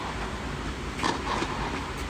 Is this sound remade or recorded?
recorded